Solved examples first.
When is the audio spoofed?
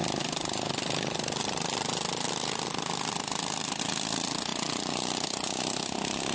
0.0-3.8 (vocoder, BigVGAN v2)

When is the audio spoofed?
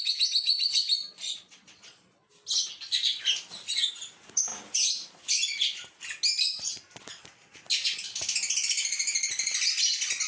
1.1-2.3 (vocoder, Vocos)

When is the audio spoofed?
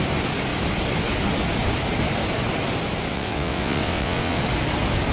3.1-4.4 (vocoder, WaveNeXt)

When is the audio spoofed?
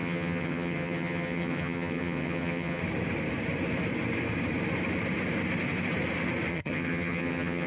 0.0-2.8 (vocoder, HiFi-GAN); 6.5-7.7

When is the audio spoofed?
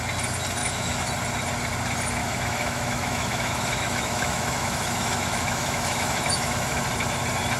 0.6-1.1 (autoencoder, DAC-VAE); 2.2-6.8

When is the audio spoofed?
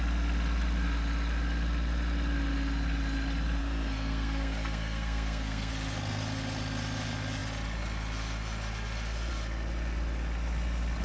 3.6-5.7 (codec, SNAC)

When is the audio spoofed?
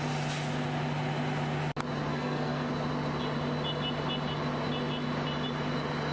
2.1-2.7 (codec, SNAC)